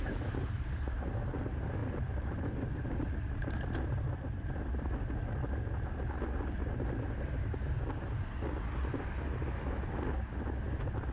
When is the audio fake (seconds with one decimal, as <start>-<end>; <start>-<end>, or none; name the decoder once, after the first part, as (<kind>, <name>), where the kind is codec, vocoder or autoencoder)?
1.8-2.4 (vocoder, BigVGAN v2)